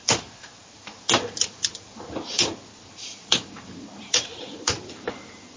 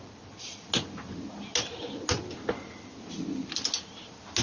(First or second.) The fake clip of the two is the first